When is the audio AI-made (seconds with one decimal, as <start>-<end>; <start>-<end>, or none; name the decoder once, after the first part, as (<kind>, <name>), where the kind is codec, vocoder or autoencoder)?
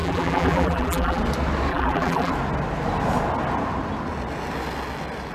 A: 0.0-1.2 (vocoder, BigVGAN v2); 1.7-2.3